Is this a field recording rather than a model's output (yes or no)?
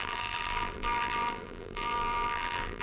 no